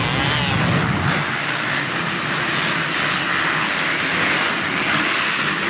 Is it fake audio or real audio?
real